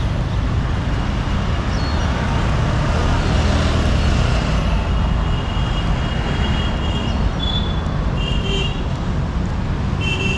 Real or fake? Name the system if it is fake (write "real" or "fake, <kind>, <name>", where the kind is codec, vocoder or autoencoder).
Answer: real